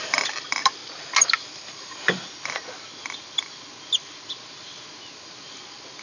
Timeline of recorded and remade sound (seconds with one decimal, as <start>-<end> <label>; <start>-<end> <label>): 0.0-6.0 recorded